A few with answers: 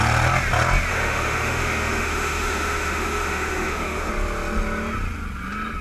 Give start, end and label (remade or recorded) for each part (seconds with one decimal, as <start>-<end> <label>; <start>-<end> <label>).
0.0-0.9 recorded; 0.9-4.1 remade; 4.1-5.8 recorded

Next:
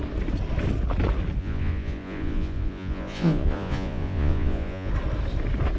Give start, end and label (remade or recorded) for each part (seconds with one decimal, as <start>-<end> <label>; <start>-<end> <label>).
0.0-1.4 recorded; 1.4-4.9 remade; 4.9-5.8 recorded

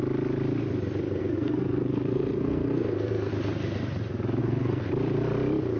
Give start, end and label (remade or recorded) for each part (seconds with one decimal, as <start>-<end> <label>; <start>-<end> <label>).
0.0-1.2 recorded; 1.2-3.3 remade; 3.3-4.4 recorded; 4.4-4.9 remade; 4.9-5.8 recorded

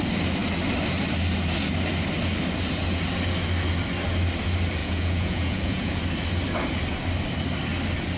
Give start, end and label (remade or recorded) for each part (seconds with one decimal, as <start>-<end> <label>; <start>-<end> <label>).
0.0-4.8 recorded; 4.8-6.0 remade; 6.0-8.2 recorded